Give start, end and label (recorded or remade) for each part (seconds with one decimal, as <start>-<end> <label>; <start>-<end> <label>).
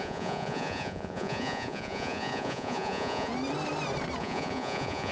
0.0-3.3 remade; 3.3-4.2 recorded; 4.2-5.1 remade